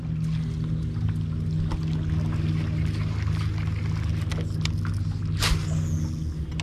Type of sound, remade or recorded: recorded